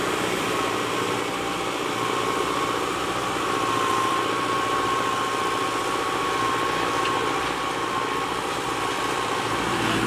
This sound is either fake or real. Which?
fake